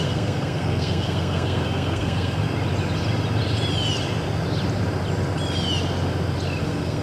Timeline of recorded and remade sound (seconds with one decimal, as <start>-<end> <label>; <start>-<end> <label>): 0.0-2.4 remade; 2.4-6.6 recorded; 6.6-7.0 remade